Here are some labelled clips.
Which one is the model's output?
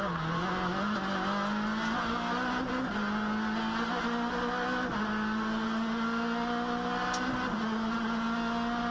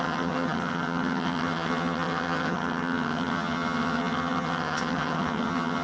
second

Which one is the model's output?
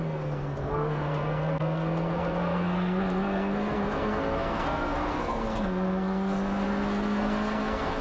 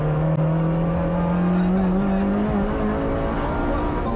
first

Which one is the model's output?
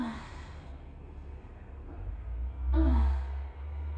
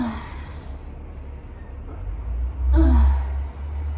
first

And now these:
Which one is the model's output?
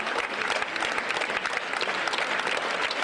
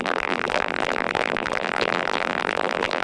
second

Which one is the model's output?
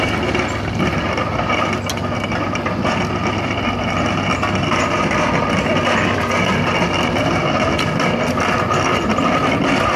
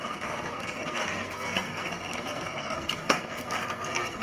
second